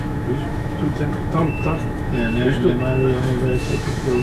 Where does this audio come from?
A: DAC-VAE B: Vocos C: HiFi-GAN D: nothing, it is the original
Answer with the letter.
A